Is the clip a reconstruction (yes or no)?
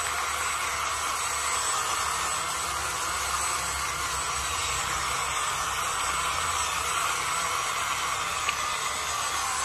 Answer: no